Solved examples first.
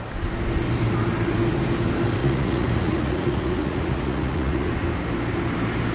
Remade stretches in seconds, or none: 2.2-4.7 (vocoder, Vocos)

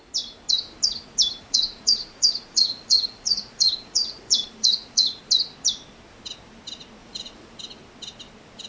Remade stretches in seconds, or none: 1.4-5.2 (vocoder, Vocos); 7.0-7.6

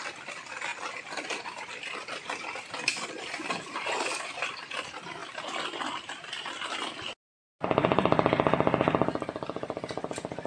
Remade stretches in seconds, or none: none

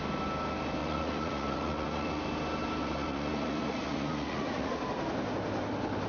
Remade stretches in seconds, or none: 0.8-2.2 (vocoder, Vocos); 2.8-4.8

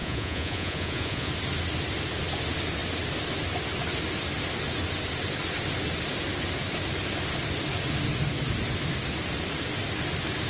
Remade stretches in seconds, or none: 0.0-1.3 (vocoder, Vocos)

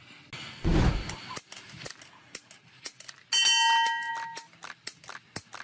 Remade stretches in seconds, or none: none

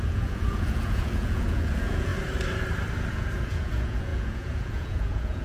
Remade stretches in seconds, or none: 0.0-2.1 (vocoder, Vocos); 3.1-5.4

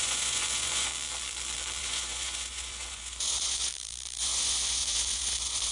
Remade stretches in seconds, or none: 0.0-0.9 (vocoder, Vocos); 1.8-3.7; 4.2-5.7